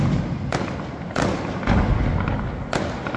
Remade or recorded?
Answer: recorded